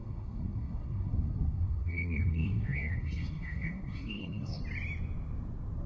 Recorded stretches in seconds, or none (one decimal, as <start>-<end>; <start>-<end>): 4.6-5.9